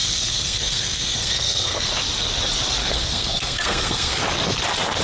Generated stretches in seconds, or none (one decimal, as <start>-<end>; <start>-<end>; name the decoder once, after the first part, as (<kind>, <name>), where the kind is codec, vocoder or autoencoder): 0.0-1.9 (codec, SNAC); 2.8-4.2